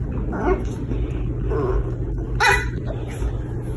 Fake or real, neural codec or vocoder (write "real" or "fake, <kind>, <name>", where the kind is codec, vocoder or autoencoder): real